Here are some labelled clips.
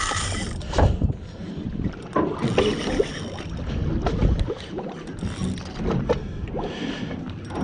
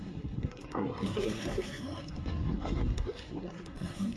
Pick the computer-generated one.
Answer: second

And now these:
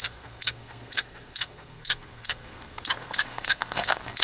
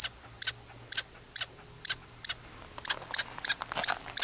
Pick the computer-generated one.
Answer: first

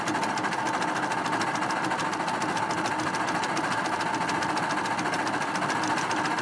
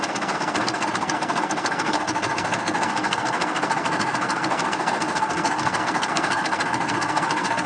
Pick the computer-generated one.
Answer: second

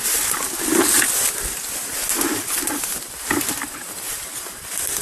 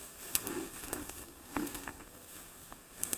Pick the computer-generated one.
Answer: second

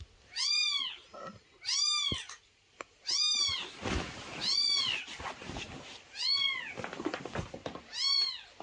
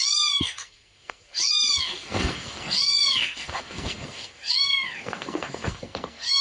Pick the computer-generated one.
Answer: second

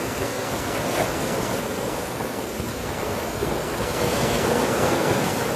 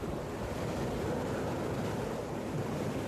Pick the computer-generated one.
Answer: first